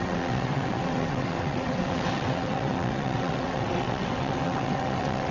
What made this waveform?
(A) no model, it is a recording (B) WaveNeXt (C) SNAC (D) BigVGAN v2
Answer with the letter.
B